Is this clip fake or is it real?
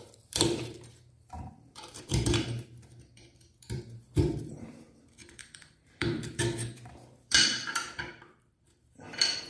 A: fake